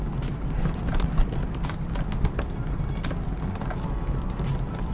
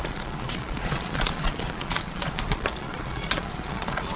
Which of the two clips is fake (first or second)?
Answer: second